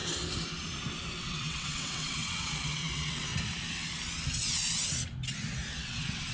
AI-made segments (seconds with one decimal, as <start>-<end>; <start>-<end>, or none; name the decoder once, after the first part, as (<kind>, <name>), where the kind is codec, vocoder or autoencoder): 1.2-3.3 (vocoder, WaveNeXt); 5.7-6.3